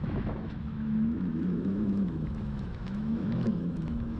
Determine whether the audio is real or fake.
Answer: fake